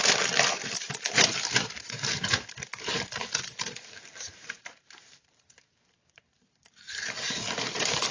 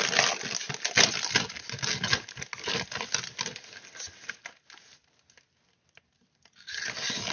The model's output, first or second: first